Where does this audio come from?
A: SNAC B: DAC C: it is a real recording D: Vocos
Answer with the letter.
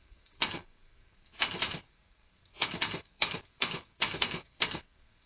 A